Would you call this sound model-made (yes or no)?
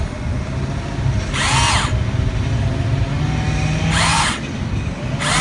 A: no